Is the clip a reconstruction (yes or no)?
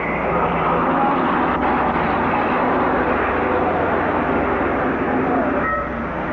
no